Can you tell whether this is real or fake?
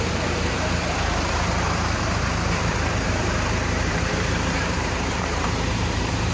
fake